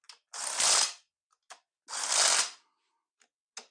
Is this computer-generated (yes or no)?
no